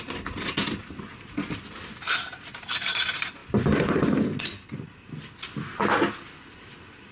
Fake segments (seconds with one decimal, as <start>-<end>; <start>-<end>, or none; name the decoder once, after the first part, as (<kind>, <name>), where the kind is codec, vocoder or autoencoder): none